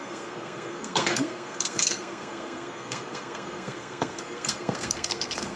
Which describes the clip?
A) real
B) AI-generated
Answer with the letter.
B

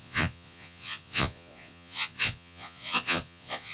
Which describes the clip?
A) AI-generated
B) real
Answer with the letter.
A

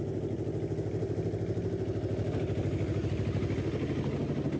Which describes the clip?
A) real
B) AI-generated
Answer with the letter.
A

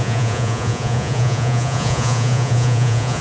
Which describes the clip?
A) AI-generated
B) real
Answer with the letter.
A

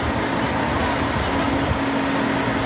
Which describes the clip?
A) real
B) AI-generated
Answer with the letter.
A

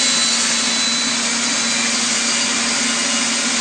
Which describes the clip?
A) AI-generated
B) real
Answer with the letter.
B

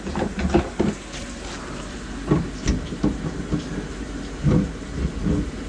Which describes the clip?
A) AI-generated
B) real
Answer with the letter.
B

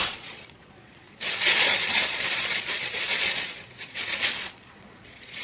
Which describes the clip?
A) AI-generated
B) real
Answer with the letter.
A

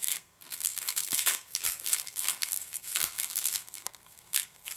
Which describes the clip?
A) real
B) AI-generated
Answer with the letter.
B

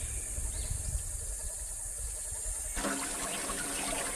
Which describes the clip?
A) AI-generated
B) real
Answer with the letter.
B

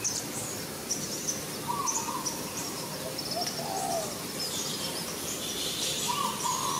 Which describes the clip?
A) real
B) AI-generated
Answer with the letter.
A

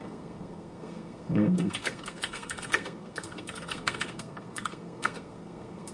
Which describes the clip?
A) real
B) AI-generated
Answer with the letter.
B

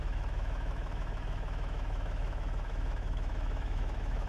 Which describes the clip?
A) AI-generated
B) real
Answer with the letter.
A